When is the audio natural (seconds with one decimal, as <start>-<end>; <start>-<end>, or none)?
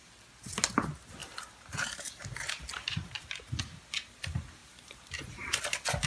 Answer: 0.0-1.2; 3.3-4.6; 5.6-6.1